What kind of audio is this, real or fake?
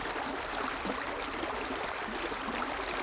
real